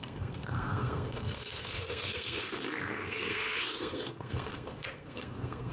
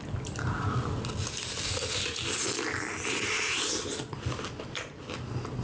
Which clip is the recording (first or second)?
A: second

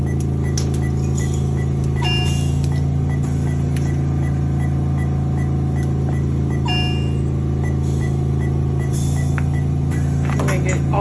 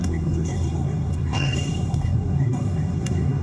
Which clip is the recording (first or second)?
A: first